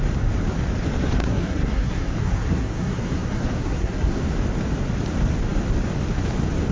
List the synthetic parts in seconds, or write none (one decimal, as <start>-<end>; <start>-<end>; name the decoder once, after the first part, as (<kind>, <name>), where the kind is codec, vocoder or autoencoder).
1.2-4.2 (codec, SNAC)